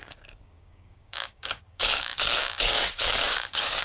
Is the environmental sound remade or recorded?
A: remade